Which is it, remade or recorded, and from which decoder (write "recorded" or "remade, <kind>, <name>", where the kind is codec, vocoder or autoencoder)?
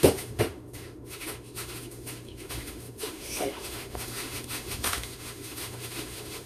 remade, autoencoder, DAC-VAE